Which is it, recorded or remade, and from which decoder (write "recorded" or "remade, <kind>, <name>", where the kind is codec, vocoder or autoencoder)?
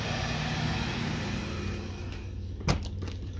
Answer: recorded